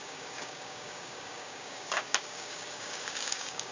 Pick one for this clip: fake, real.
fake